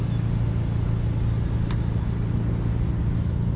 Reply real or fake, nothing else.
real